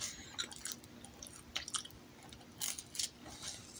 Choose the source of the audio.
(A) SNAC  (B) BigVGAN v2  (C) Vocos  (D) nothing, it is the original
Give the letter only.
D